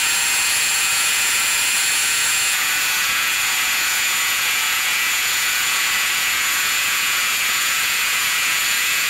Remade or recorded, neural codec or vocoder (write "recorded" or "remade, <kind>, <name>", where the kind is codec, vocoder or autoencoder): remade, vocoder, Vocos